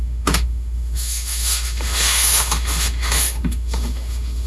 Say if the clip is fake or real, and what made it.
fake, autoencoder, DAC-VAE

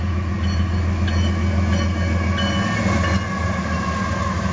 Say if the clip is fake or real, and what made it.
real